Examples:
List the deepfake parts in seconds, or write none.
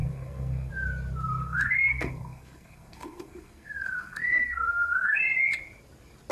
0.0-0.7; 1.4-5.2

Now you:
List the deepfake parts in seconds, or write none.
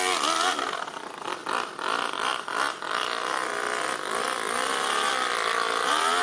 none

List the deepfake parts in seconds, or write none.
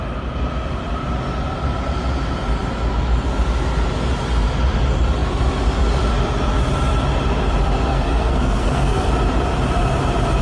7.9-9.1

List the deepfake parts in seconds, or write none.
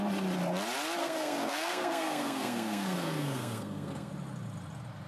1.0-4.1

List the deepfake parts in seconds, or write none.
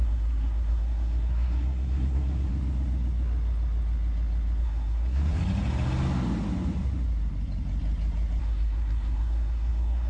0.0-2.5; 4.6-5.4; 8.4-10.1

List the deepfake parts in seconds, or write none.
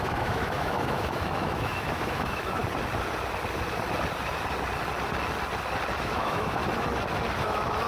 0.0-2.6; 6.0-6.6; 7.4-7.9